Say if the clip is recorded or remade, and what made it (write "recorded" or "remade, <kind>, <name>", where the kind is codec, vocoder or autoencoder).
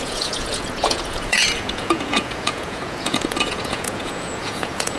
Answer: remade, vocoder, Vocos